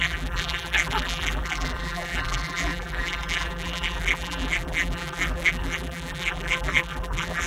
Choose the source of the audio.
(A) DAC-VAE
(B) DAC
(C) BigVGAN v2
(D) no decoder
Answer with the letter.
C